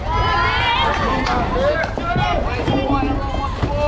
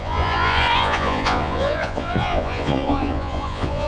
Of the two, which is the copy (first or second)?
second